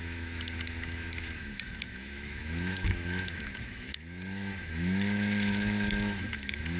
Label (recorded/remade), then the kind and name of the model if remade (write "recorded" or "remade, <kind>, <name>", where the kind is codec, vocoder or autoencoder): remade, autoencoder, DAC-VAE